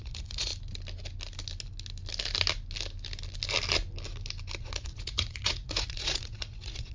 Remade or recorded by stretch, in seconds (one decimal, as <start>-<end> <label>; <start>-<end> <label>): 0.0-0.5 remade; 0.5-4.6 recorded; 4.6-6.9 remade